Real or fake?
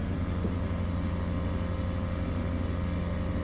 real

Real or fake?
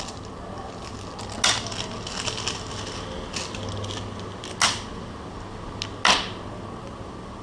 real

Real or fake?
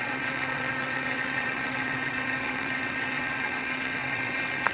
fake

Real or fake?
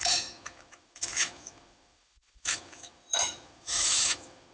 fake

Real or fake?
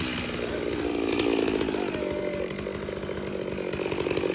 real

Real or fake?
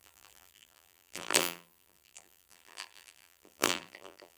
fake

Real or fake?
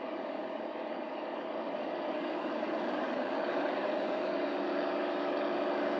fake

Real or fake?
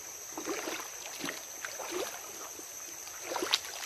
real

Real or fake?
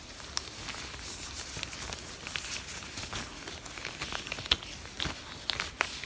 real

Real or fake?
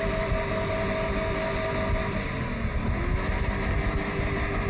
real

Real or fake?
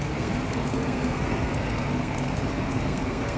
fake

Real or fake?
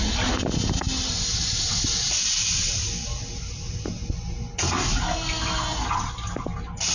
real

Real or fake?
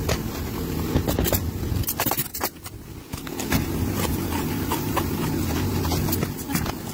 real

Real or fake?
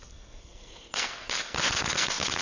fake